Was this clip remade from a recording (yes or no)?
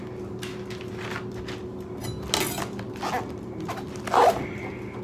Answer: no